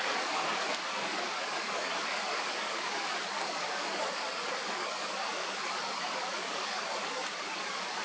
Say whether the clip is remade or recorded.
remade